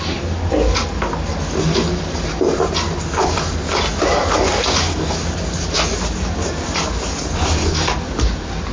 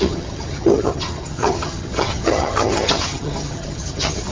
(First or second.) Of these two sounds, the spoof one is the second